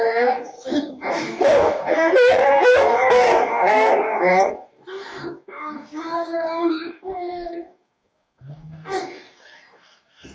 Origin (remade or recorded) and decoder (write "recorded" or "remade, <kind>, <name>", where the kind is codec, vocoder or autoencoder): remade, codec, DAC